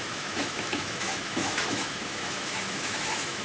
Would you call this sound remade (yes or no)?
yes